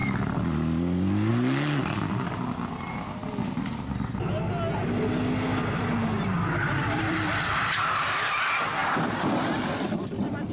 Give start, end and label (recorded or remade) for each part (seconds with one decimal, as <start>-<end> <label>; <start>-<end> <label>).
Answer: 0.0-6.7 recorded; 6.7-8.4 remade; 8.4-8.8 recorded; 8.8-10.5 remade